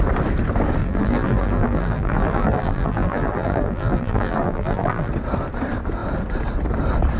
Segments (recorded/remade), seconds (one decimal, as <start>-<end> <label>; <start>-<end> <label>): 0.0-0.8 recorded; 0.8-5.1 remade; 5.1-7.2 recorded